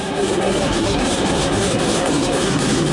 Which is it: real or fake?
fake